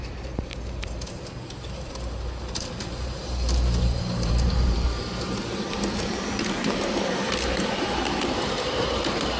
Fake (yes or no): yes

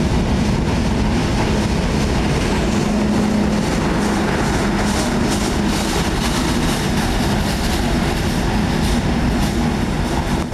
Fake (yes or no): no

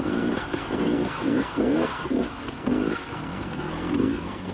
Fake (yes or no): yes